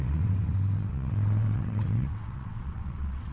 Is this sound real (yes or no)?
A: no